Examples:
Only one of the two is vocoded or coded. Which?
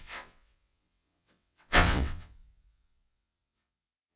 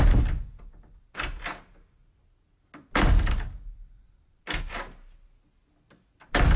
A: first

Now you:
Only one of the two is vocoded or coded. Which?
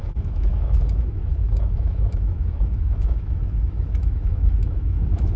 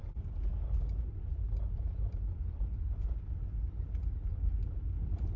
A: first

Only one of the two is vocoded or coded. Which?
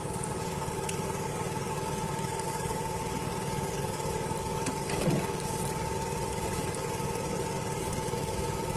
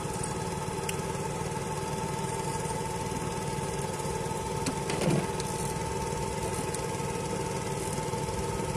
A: first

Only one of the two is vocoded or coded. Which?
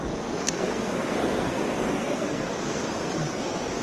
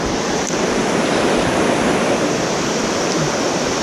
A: first